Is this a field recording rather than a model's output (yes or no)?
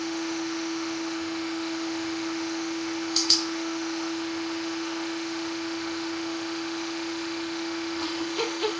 no